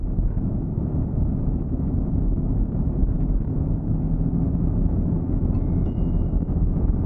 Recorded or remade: remade